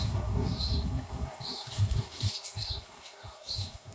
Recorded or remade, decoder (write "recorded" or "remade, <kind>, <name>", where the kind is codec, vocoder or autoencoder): remade, codec, SNAC